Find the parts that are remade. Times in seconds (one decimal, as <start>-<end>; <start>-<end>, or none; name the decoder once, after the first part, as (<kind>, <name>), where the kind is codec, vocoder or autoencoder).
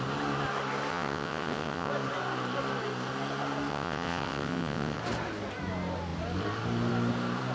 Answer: 0.9-1.9 (vocoder, WaveNeXt); 3.7-5.0